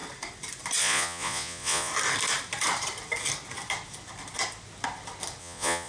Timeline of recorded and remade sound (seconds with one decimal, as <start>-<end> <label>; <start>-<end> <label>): 0.0-0.8 recorded; 0.8-1.9 remade; 1.9-5.4 recorded; 5.4-5.9 remade